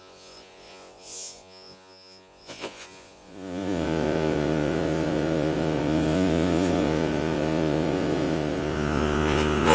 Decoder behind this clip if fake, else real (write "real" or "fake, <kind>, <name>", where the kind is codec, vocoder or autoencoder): fake, vocoder, Vocos